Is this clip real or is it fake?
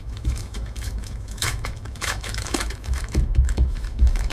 fake